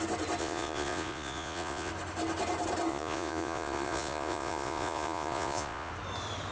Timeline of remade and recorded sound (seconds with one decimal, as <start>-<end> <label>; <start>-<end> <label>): 0.0-0.4 recorded; 0.4-1.9 remade; 1.9-2.9 recorded; 2.9-5.9 remade; 5.9-6.5 recorded